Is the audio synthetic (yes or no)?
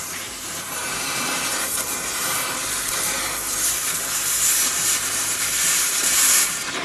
yes